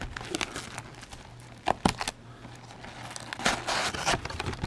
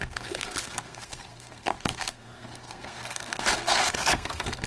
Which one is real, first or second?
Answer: first